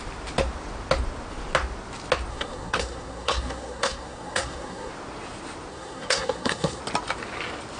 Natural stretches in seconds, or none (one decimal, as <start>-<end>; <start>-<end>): 0.0-2.3; 4.9-5.7; 6.8-7.8